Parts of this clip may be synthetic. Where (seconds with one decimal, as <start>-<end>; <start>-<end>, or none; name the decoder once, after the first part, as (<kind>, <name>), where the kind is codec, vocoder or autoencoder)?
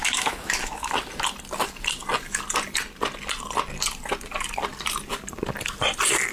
0.0-0.9 (autoencoder, DAC-VAE)